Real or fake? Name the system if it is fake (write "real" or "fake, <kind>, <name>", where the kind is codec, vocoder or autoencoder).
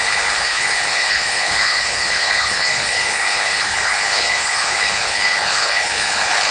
fake, codec, HILCodec